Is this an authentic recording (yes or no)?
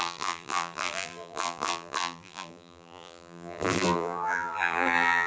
no